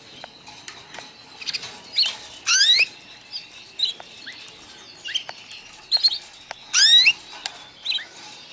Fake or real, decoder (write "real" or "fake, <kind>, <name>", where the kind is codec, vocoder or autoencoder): real